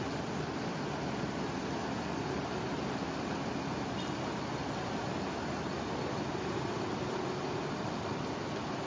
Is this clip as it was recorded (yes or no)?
yes